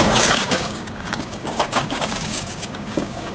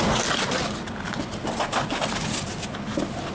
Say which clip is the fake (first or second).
first